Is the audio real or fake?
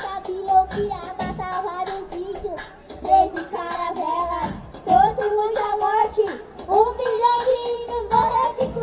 real